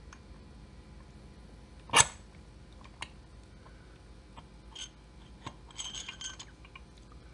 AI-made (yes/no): no